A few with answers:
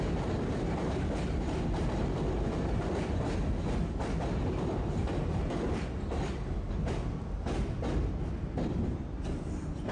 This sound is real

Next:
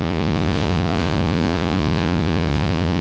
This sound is fake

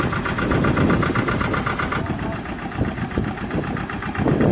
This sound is real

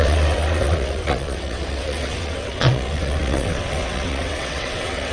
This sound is fake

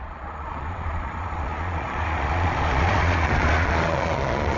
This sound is fake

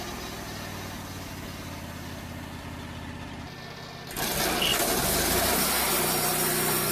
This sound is real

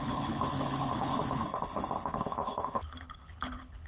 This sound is fake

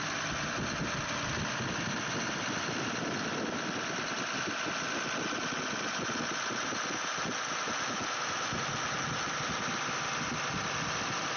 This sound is real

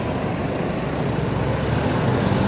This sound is real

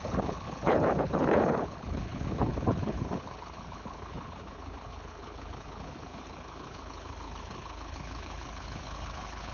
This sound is fake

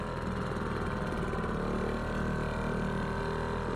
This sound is real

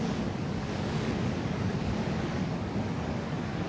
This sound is fake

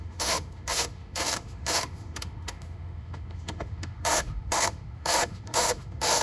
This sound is fake